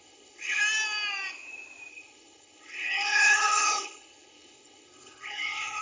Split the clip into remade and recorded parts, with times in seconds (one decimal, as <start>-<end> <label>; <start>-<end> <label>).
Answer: 0.0-0.6 remade; 0.6-1.9 recorded; 1.9-5.8 remade